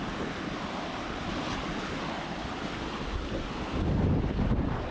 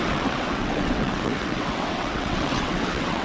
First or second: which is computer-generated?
second